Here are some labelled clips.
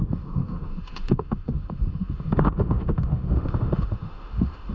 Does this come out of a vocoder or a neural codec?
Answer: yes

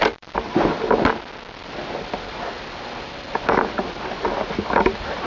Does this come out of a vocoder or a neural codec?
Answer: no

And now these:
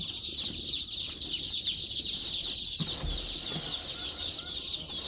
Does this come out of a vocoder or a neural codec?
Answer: no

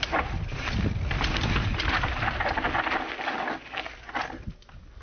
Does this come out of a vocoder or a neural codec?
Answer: no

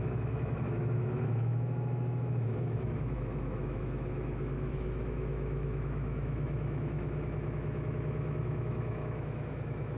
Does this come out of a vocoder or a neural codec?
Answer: yes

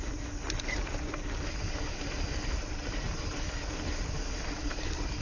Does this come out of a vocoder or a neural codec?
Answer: no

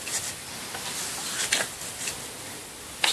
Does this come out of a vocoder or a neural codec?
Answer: no